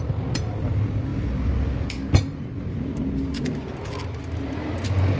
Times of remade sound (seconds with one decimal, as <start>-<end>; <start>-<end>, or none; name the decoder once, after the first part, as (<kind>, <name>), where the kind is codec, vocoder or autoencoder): none